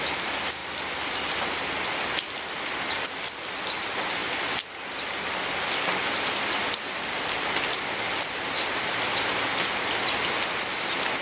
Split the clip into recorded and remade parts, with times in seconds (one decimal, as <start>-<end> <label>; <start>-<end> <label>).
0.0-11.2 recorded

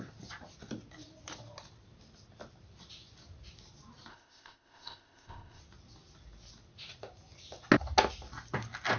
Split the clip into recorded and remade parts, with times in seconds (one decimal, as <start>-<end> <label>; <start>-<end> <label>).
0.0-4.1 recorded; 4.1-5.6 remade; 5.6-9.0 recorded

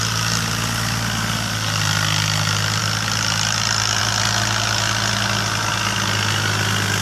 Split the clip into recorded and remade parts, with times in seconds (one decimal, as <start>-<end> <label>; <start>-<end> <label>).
0.0-7.0 recorded

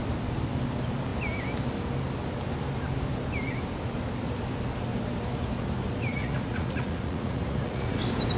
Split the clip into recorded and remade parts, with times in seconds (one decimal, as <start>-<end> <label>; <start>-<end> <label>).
0.0-6.1 recorded; 6.1-8.0 remade; 8.0-8.4 recorded

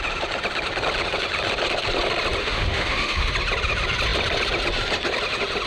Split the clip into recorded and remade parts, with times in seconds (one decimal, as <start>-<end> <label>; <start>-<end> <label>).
0.0-2.4 recorded; 2.4-3.3 remade; 3.3-5.7 recorded